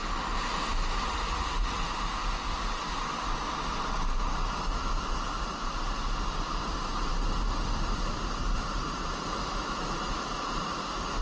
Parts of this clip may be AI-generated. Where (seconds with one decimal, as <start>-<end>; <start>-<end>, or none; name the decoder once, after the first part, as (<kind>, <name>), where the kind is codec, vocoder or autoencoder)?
none